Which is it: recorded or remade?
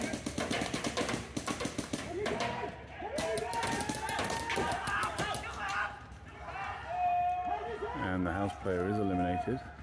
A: recorded